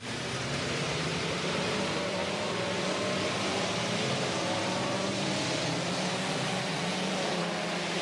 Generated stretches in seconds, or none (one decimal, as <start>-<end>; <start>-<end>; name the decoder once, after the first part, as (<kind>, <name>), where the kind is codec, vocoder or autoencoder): 0.0-2.2 (vocoder, BigVGAN v2); 3.5-5.3; 7.3-8.0